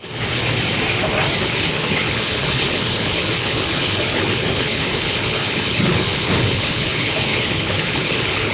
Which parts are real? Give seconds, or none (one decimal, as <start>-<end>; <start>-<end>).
0.4-1.4